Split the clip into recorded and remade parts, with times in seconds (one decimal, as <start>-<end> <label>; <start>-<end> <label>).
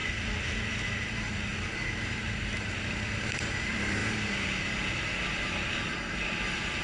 0.0-0.7 recorded; 0.7-1.5 remade; 1.5-2.1 recorded; 2.1-4.0 remade; 4.0-5.5 recorded; 5.5-6.8 remade